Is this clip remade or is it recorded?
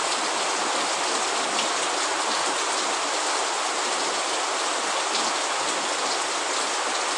recorded